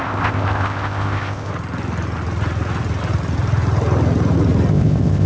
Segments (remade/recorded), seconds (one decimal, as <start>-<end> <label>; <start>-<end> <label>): 0.0-1.5 remade; 1.5-4.7 recorded; 4.7-5.3 remade